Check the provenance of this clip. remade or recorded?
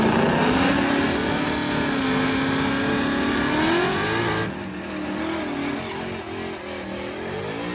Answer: recorded